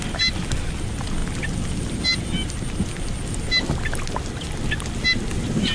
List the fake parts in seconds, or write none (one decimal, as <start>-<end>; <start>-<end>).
none